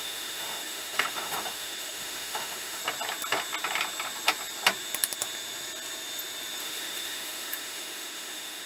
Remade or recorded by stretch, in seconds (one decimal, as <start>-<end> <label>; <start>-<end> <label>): 0.0-2.8 remade; 2.8-6.6 recorded; 6.6-8.7 remade